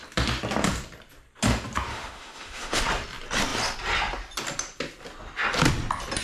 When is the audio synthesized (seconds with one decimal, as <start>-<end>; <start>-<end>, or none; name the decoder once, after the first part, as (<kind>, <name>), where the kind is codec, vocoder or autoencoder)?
1.9-2.8 (autoencoder, DAC-VAE)